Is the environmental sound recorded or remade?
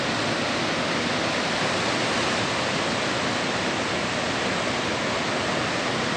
recorded